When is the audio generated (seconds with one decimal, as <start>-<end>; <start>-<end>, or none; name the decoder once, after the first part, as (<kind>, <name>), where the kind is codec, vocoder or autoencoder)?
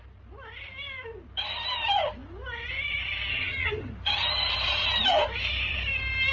3.3-3.9 (vocoder, HiFi-GAN)